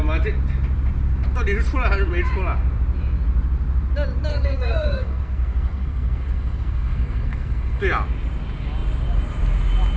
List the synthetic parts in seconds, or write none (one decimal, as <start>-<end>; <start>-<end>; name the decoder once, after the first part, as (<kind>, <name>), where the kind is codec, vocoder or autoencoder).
4.3-7.8 (codec, SNAC)